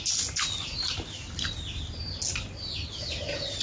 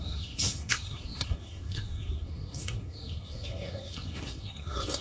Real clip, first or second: first